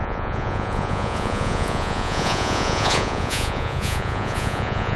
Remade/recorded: remade